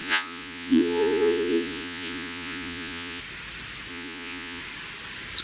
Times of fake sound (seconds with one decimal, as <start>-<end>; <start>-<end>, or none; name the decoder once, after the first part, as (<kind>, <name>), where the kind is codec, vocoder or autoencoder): 0.0-3.2 (vocoder, Vocos); 3.9-4.6